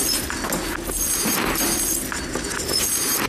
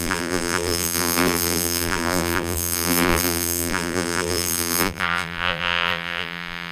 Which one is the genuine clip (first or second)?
first